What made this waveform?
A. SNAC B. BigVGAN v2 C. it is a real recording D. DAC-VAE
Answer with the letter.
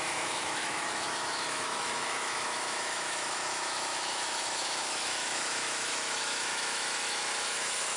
D